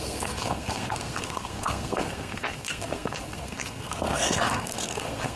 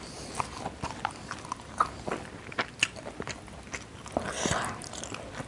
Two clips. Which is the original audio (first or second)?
second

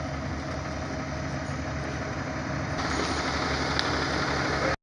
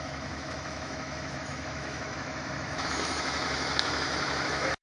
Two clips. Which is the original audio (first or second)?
first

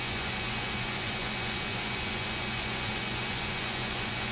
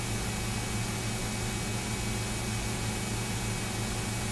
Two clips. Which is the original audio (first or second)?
second